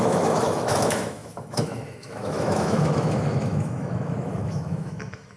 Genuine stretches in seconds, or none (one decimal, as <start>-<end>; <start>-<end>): none